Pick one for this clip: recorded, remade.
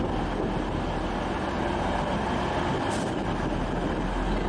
recorded